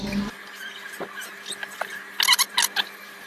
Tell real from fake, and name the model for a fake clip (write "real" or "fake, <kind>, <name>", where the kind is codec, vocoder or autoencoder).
real